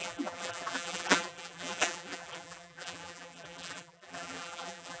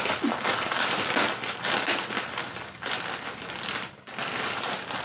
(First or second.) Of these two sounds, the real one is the second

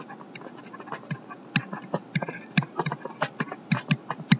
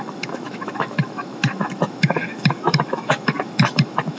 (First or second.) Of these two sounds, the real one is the first